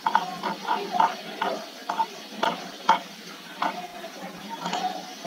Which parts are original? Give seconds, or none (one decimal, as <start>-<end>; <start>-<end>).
0.0-1.8; 3.2-5.3